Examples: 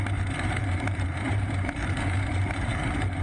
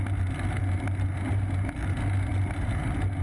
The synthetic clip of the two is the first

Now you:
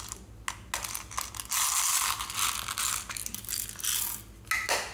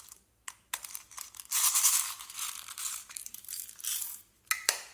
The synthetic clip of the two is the second